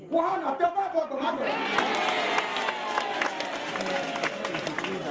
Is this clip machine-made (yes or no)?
no